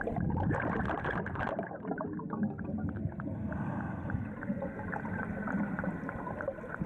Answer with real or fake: real